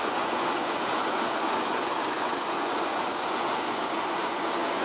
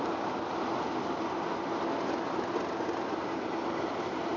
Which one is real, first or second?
second